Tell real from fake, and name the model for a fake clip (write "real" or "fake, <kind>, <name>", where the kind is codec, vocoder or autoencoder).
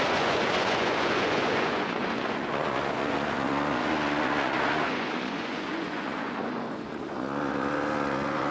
fake, vocoder, Vocos